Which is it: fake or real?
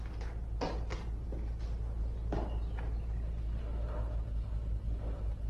real